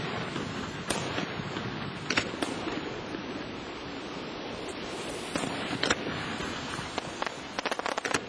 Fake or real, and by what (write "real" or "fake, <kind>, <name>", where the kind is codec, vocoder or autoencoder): real